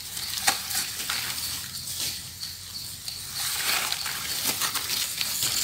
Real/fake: real